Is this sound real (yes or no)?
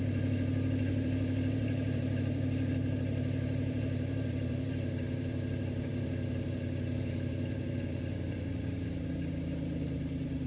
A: no